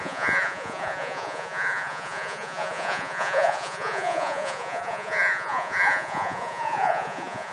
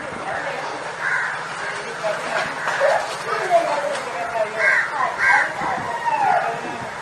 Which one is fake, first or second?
first